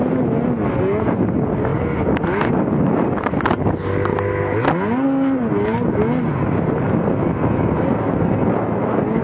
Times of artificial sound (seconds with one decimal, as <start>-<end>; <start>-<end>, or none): none